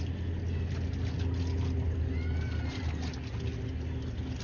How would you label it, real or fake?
real